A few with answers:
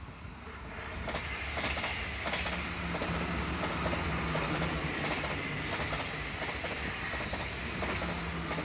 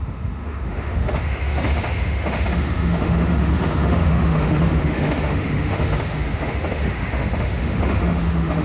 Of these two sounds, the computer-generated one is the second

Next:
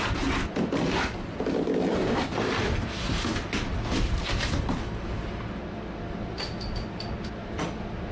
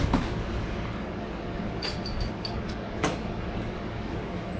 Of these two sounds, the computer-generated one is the second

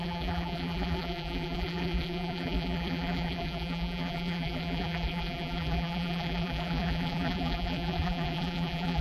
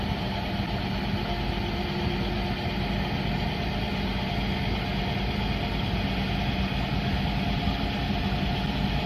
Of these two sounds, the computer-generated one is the first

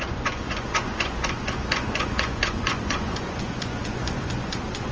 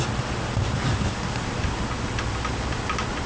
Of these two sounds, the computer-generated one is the first